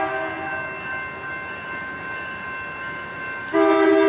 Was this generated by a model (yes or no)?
no